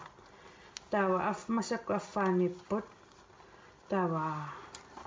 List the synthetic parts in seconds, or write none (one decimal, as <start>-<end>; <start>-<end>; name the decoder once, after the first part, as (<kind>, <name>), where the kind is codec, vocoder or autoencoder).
none